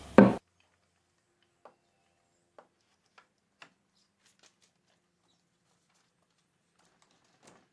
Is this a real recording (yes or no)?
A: yes